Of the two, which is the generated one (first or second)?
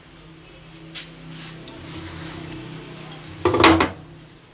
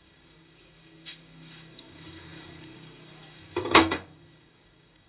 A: second